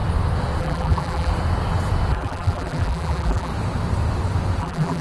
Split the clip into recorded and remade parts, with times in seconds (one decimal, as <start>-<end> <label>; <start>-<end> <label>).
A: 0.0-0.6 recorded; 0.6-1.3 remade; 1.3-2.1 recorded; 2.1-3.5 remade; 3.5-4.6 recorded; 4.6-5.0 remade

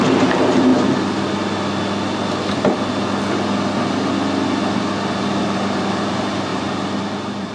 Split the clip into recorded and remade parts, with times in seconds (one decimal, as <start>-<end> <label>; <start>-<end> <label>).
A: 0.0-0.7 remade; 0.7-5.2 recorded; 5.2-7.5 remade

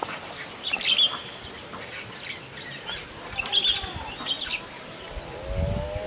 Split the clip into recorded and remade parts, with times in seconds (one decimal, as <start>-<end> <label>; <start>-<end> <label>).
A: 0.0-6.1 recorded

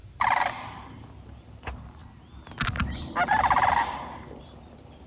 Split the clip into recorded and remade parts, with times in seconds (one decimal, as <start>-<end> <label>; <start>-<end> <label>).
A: 0.0-2.0 remade; 2.0-2.7 recorded; 2.7-5.1 remade